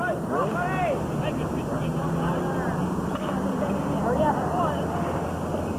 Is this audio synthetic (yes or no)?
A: no